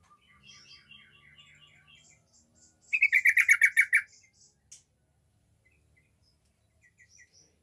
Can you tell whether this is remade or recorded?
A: recorded